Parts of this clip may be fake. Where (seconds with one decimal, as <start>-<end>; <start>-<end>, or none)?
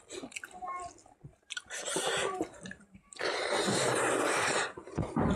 1.3-4.1; 4.8-5.4